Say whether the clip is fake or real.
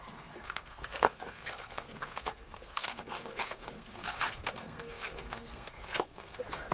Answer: fake